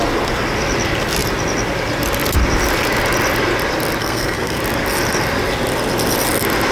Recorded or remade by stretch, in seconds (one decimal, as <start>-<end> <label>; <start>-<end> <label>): 0.0-4.0 recorded; 4.0-4.6 remade; 4.6-6.7 recorded